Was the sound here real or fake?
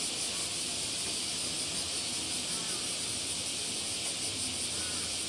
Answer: real